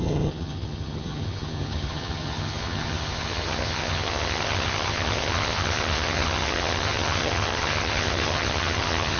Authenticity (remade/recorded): remade